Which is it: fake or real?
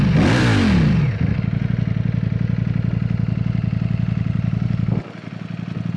real